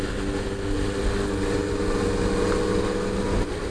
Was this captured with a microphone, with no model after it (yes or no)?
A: yes